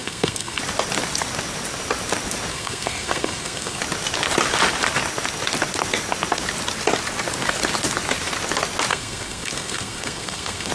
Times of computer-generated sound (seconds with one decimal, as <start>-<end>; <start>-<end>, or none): 0.0-0.6; 2.5-3.8; 8.9-10.7